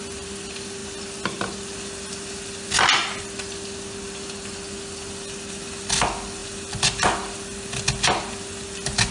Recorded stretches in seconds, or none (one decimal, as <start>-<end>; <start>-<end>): 0.0-9.1